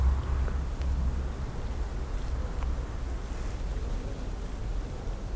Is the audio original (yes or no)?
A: yes